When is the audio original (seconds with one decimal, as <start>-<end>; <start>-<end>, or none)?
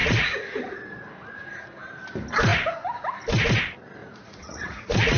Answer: 1.4-4.0